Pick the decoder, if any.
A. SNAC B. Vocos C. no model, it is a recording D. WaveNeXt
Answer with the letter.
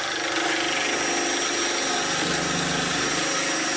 C